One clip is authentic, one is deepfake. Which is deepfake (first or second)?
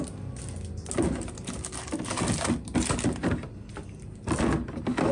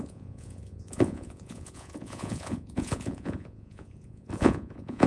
second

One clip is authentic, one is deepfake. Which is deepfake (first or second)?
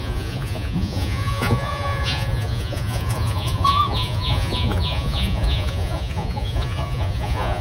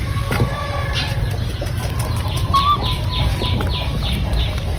first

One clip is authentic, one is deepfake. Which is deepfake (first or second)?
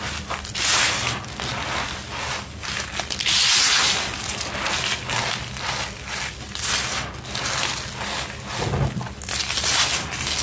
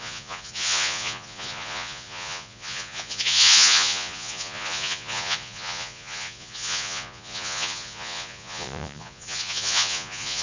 second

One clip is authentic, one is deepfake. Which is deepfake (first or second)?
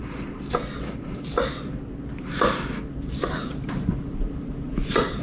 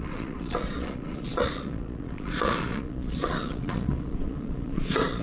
second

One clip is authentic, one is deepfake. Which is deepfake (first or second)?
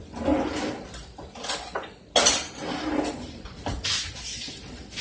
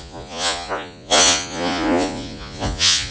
second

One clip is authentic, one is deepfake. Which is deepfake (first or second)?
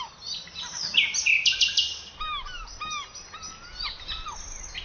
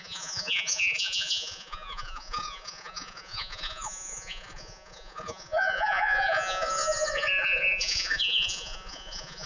second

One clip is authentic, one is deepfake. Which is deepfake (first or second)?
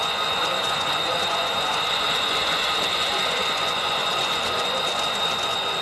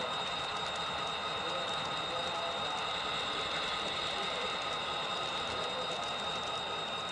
first